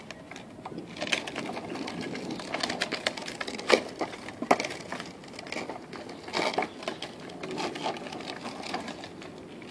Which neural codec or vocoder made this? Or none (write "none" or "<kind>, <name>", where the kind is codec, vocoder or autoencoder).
none